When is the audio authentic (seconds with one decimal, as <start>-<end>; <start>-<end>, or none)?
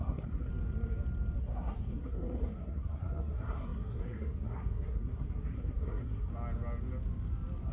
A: 0.5-1.4; 6.3-7.7